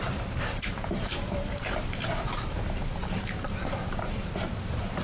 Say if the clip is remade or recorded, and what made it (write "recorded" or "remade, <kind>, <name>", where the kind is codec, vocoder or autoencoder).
remade, vocoder, BigVGAN v2